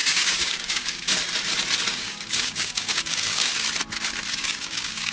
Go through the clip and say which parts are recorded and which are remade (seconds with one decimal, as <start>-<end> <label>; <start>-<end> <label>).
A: 0.0-1.1 remade; 1.1-1.9 recorded; 1.9-3.5 remade; 3.5-4.3 recorded; 4.3-5.1 remade